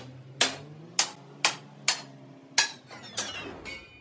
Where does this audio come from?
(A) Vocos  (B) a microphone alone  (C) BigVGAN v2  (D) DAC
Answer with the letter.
B